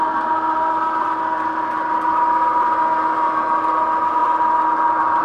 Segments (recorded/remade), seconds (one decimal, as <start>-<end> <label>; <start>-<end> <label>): 0.0-5.2 recorded